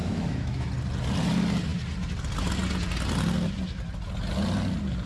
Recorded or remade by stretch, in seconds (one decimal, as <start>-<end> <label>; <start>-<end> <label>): 0.0-0.7 remade; 0.7-5.1 recorded